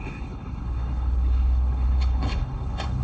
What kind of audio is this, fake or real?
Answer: fake